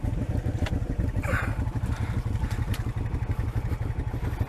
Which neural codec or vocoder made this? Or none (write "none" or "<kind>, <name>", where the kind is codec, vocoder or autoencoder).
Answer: none